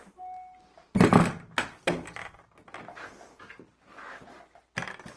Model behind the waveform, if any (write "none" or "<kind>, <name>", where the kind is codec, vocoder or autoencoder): none